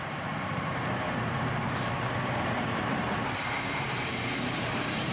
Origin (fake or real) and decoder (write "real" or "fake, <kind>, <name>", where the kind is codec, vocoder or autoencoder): fake, vocoder, BigVGAN v2